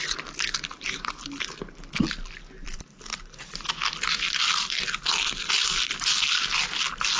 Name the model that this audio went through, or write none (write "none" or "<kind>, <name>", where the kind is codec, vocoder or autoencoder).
none